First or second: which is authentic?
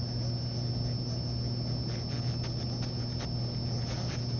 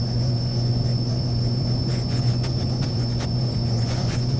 first